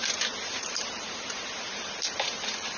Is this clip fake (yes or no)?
yes